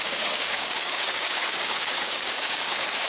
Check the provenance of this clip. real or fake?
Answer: fake